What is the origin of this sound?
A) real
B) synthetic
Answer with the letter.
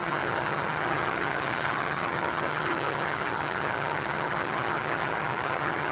B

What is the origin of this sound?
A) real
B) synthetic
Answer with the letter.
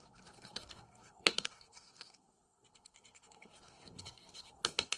B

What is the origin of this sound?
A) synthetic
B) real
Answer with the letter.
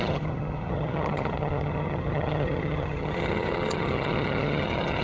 A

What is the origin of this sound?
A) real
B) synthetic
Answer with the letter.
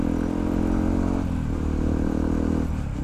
A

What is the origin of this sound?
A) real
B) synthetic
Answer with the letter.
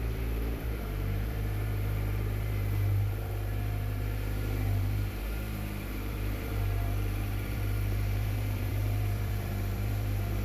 B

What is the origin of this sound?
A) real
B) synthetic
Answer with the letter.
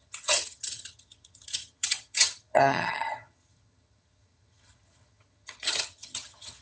B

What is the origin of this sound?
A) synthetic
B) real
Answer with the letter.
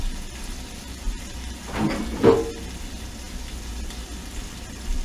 B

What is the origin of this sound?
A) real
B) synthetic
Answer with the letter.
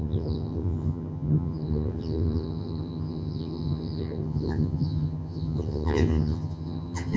B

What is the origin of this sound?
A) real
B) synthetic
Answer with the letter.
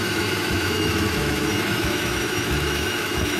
B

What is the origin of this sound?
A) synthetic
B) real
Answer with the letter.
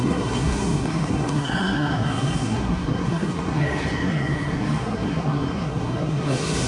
A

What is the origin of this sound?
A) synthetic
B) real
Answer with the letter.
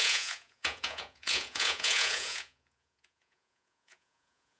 A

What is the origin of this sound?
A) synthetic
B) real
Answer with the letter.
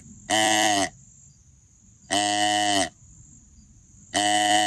A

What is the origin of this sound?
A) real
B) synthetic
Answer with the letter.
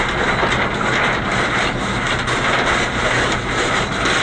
A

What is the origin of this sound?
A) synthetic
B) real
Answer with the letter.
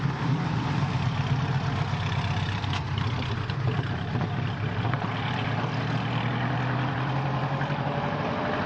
A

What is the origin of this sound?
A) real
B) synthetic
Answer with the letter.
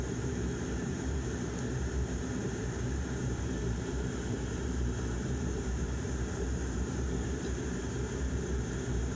B